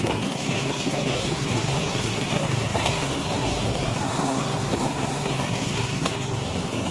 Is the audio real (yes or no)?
no